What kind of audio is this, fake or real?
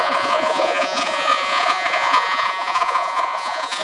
fake